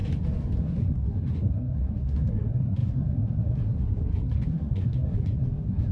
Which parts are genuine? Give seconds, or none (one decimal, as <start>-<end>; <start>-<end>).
0.0-0.6